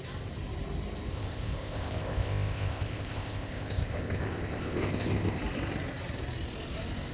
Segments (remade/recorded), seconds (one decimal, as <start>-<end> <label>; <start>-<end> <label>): 0.0-1.1 recorded; 1.1-5.4 remade; 5.4-7.1 recorded